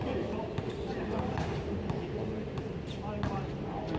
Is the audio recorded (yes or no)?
yes